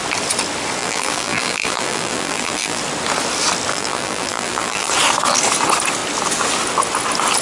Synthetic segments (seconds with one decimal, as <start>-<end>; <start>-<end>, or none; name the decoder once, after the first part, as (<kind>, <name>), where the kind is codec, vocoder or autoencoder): 0.8-2.8 (vocoder, BigVGAN v2); 3.7-4.9